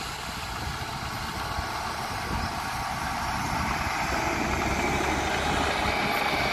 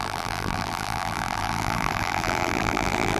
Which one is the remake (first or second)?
second